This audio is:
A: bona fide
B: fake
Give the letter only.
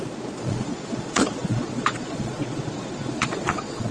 B